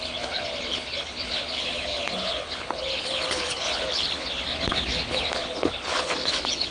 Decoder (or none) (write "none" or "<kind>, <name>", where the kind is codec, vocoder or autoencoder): codec, HILCodec